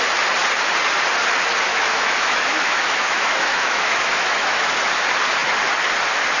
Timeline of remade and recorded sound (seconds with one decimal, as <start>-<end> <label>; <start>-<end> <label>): 0.0-1.7 recorded; 1.7-4.7 remade; 4.7-6.4 recorded